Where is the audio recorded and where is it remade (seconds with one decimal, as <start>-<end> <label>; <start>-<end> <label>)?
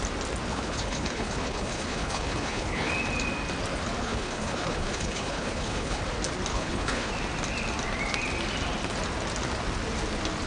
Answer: 0.0-0.5 recorded; 0.5-2.9 remade; 2.9-4.0 recorded; 4.0-6.0 remade; 6.0-6.5 recorded; 6.5-7.1 remade; 7.1-10.5 recorded